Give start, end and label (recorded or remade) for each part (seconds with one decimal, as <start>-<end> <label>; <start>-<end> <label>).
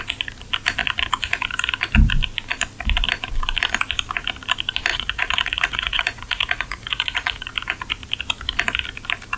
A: 0.0-4.9 recorded; 4.9-7.5 remade; 7.5-9.4 recorded